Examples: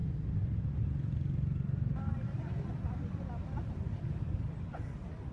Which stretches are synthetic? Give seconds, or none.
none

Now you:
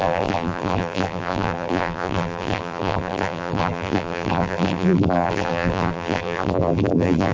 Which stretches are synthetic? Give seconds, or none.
0.0-7.3 (vocoder, BigVGAN v2)

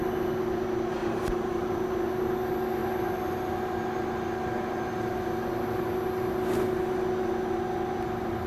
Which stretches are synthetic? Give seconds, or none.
1.0-1.7 (vocoder, BigVGAN v2)

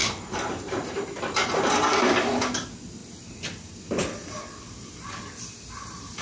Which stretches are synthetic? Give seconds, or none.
0.0-2.1 (vocoder, BigVGAN v2)

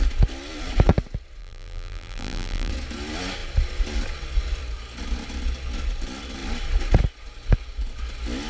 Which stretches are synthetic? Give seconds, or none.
1.4-2.7 (vocoder, BigVGAN v2)

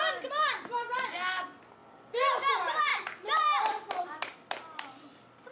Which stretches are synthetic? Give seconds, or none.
0.0-1.8 (vocoder, BigVGAN v2); 2.5-2.9; 3.9-4.3; 5.0-5.5